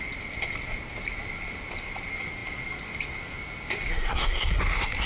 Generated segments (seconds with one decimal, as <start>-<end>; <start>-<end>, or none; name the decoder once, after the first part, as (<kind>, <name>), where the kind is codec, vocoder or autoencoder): 3.9-4.6 (codec, SNAC)